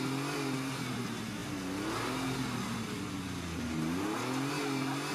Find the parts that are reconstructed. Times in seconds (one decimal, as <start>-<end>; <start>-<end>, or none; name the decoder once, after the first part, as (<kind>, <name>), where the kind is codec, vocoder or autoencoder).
none

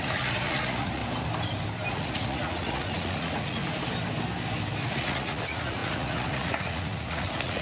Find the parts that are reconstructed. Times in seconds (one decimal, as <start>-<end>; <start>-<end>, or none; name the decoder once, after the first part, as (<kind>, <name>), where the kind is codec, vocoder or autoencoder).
0.0-1.0 (vocoder, Vocos); 1.9-3.6; 4.8-7.6

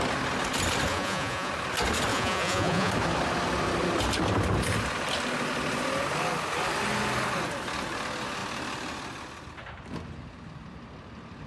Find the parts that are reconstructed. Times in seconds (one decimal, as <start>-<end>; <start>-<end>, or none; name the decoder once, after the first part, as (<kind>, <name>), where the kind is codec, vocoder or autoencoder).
0.9-1.5 (vocoder, Vocos); 2.1-2.9

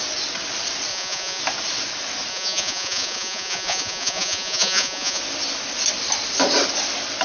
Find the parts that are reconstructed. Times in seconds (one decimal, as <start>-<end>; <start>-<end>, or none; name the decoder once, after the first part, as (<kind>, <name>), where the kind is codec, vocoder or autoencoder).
0.9-1.4 (vocoder, Vocos); 2.3-5.2

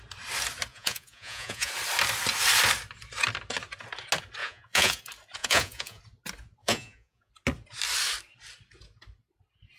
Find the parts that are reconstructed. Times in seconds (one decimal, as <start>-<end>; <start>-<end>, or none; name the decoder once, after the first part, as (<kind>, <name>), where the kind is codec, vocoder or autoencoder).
0.7-1.7 (vocoder, Vocos); 4.4-5.0; 5.4-6.0; 6.6-7.3

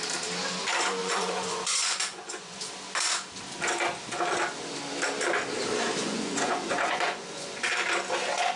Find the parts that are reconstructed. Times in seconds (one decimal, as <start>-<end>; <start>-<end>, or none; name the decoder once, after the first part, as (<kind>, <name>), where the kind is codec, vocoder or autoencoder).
1.0-2.6 (vocoder, Vocos); 6.0-7.6

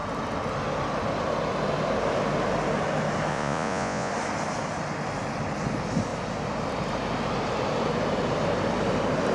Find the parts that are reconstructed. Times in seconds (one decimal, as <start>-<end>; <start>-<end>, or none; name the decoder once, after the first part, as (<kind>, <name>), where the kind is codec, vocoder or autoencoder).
3.3-4.1 (vocoder, Vocos)

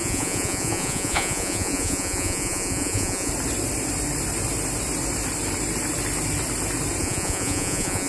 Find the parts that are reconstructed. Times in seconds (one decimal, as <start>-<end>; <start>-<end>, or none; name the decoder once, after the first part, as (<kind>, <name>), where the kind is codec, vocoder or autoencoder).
0.0-3.3 (vocoder, Vocos); 7.0-8.1